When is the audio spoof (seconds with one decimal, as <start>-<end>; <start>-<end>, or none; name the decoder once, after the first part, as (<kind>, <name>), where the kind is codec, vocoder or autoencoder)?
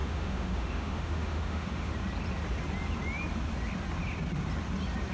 0.0-1.9 (autoencoder, DAC-VAE)